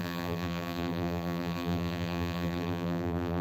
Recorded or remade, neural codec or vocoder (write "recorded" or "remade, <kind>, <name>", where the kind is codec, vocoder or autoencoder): remade, vocoder, BigVGAN v2